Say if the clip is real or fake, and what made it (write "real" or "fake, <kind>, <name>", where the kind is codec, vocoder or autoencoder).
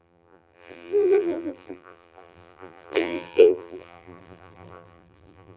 fake, vocoder, BigVGAN v2